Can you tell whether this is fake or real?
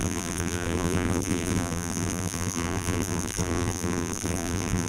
fake